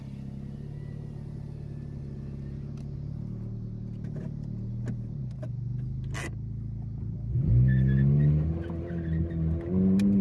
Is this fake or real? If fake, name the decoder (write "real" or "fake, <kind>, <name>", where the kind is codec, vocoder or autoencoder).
real